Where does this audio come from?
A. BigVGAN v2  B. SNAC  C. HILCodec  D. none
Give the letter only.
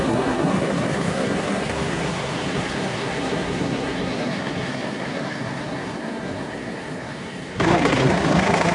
B